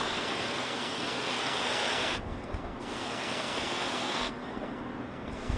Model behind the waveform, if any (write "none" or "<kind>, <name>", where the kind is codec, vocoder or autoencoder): codec, SNAC